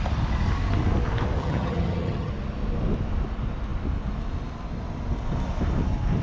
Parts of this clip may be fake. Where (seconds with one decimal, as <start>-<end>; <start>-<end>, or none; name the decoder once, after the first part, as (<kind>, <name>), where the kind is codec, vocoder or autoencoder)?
1.4-2.3 (vocoder, HiFi-GAN)